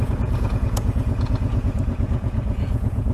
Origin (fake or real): fake